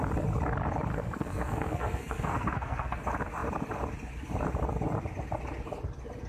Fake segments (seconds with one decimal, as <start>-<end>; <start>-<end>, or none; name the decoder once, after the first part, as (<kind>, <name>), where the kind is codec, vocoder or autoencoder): 0.9-3.0 (codec, SNAC)